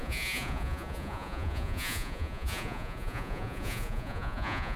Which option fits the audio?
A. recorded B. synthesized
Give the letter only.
B